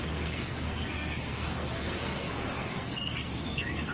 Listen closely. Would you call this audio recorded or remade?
remade